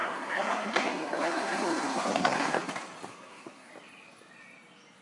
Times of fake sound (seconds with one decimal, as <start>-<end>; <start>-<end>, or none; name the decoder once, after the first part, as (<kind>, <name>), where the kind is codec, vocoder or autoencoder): 0.0-2.7 (codec, SNAC); 3.1-3.7